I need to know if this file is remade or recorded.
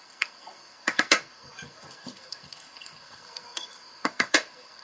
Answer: remade